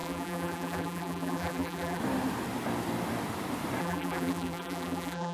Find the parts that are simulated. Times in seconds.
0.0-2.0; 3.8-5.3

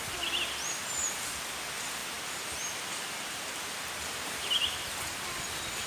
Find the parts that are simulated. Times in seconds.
2.0-4.5

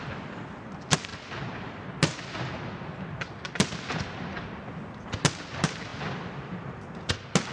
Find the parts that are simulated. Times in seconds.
none

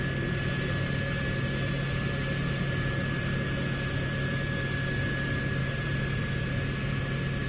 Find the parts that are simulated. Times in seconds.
5.6-6.6

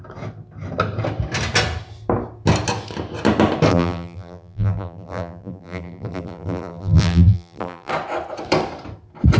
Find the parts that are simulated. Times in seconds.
3.7-7.9